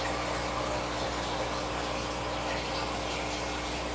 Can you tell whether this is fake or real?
real